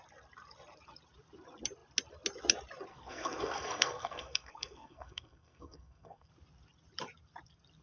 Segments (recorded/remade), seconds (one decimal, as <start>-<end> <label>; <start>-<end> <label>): 0.0-2.9 recorded; 2.9-6.3 remade; 6.3-7.8 recorded

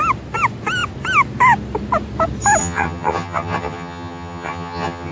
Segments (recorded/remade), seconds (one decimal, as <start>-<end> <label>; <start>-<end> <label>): 0.0-2.6 recorded; 2.6-5.1 remade

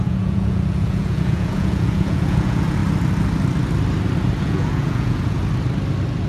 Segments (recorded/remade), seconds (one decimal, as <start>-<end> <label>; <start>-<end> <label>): 0.0-2.8 remade; 2.8-4.4 recorded; 4.4-5.4 remade; 5.4-6.3 recorded